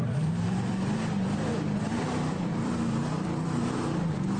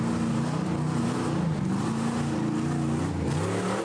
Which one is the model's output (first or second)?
first